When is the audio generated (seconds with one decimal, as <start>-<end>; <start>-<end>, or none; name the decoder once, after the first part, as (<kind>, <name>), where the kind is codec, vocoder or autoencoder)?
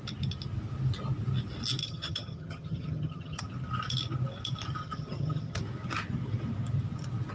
1.8-3.4 (vocoder, HiFi-GAN); 4.8-5.6